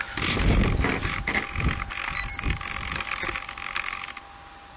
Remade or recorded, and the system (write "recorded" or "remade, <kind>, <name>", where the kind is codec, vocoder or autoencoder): recorded